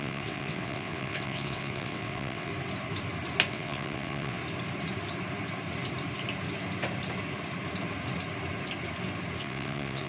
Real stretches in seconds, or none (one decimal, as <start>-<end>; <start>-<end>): 2.5-3.5; 4.4-9.4